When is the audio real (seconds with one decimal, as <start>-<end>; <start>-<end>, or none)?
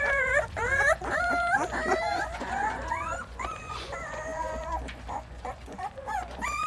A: none